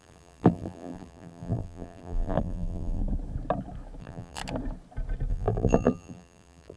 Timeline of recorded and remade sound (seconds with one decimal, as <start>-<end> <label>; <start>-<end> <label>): 0.0-3.0 remade; 3.0-4.0 recorded; 4.0-4.4 remade; 4.4-5.3 recorded; 5.3-6.8 remade

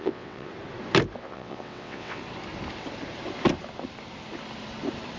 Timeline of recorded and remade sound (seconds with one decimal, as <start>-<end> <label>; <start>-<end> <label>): 0.0-0.5 remade; 0.5-1.2 recorded; 1.2-2.2 remade; 2.2-5.2 recorded

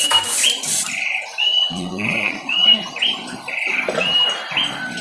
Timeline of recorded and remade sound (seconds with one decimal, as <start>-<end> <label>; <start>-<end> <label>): 0.0-1.5 recorded; 1.5-2.8 remade; 2.8-5.0 recorded

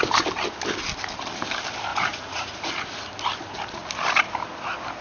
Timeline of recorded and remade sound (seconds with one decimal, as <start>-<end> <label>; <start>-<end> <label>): 0.0-1.9 recorded; 1.9-2.7 remade; 2.7-5.0 recorded

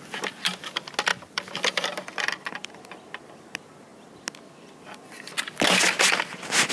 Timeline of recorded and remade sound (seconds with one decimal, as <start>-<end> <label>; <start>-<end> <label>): 0.0-1.1 recorded; 1.1-2.7 remade; 2.7-6.7 recorded

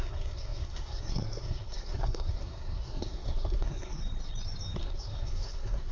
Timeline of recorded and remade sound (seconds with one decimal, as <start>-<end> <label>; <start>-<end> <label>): 0.0-4.0 remade; 4.0-4.8 recorded; 4.8-5.9 remade